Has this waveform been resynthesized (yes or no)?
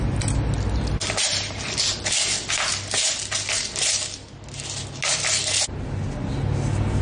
no